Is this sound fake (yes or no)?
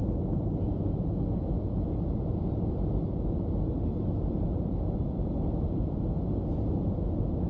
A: no